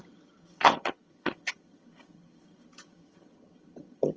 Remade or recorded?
remade